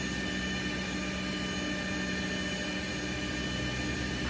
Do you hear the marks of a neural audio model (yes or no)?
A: no